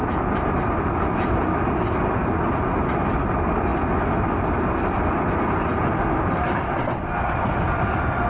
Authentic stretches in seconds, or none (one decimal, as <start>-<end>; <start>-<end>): 0.0-8.3